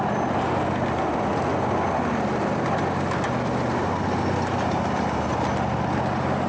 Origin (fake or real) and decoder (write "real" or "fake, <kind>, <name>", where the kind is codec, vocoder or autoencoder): real